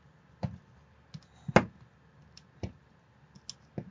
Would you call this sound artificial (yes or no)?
no